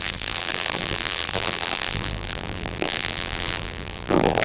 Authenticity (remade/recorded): remade